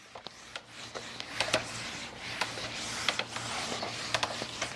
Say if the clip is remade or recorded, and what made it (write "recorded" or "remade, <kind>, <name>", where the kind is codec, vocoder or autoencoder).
recorded